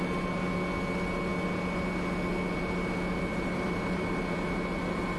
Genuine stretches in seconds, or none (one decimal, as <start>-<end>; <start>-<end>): 0.0-3.3; 4.2-5.2